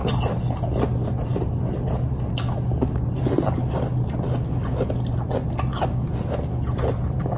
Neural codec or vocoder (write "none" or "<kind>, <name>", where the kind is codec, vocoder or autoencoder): none